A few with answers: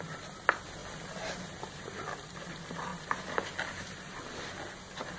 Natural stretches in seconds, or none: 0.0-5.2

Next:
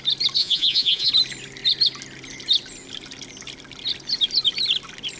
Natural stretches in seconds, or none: 0.0-0.4; 1.1-5.2

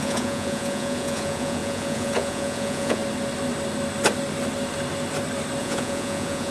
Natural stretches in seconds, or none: 3.0-5.6